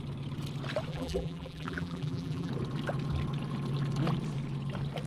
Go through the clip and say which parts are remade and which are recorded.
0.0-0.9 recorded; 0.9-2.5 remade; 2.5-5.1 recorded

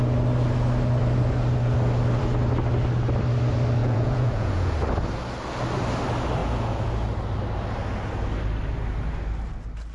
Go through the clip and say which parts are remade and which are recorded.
0.0-3.8 recorded; 3.8-4.7 remade; 4.7-6.4 recorded; 6.4-6.9 remade; 6.9-9.9 recorded

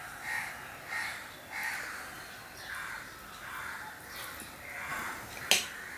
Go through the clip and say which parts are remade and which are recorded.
0.0-6.0 recorded

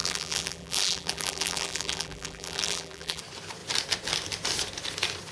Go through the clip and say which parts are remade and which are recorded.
0.0-3.2 remade; 3.2-5.3 recorded

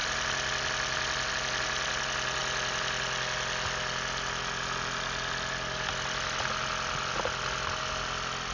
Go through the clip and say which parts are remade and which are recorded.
0.0-8.5 recorded

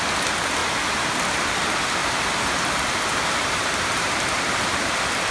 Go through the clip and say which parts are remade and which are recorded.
0.0-0.6 recorded; 0.6-1.5 remade; 1.5-2.0 recorded; 2.0-4.8 remade; 4.8-5.3 recorded

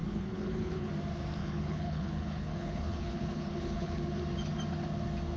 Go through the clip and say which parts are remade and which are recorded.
0.0-0.9 remade; 0.9-1.4 recorded; 1.4-4.2 remade; 4.2-5.4 recorded